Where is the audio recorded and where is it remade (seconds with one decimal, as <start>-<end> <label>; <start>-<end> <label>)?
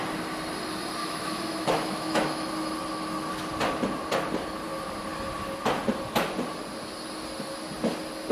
0.0-1.0 recorded; 1.0-2.5 remade; 2.5-8.3 recorded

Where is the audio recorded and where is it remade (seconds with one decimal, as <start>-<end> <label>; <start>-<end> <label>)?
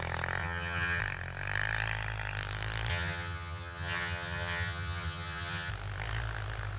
0.0-0.4 recorded; 0.4-1.0 remade; 1.0-2.9 recorded; 2.9-5.7 remade; 5.7-6.8 recorded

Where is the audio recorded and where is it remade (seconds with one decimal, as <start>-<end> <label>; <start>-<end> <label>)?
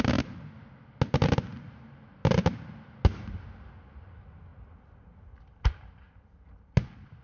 0.0-1.5 recorded; 1.5-2.1 remade; 2.1-7.2 recorded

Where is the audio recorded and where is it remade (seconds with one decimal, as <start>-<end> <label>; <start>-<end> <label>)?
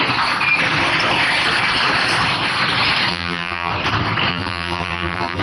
0.0-3.1 recorded; 3.1-3.7 remade; 3.7-4.3 recorded; 4.3-5.4 remade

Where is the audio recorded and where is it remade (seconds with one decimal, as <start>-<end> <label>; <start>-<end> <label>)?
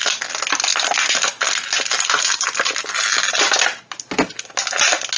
0.0-5.2 recorded